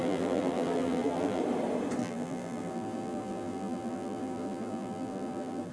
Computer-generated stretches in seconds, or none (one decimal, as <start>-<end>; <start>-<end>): 0.0-1.4; 2.0-5.7